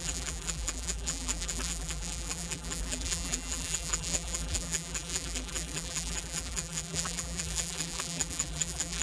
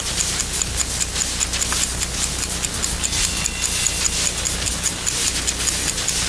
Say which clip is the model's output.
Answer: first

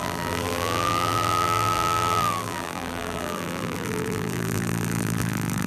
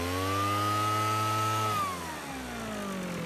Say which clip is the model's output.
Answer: first